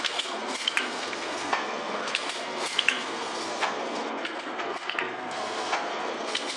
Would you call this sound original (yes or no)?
no